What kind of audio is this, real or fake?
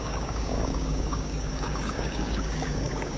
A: fake